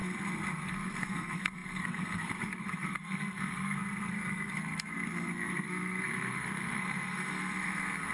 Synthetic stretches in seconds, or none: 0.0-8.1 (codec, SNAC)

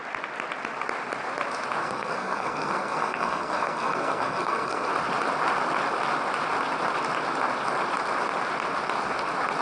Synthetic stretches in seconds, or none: 1.8-4.9 (codec, SNAC)

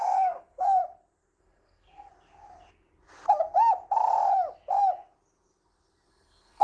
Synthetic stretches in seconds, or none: 0.0-0.8 (codec, SNAC); 1.4-2.1; 6.1-6.6

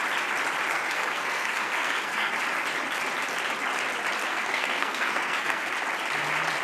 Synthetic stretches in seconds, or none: 0.7-2.4 (codec, SNAC); 4.2-5.7

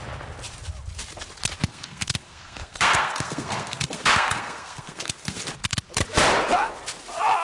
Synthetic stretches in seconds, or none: 1.7-5.4 (codec, SNAC)